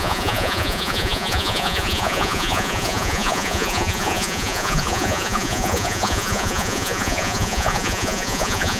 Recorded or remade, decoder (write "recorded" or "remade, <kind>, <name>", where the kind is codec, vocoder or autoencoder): remade, vocoder, Vocos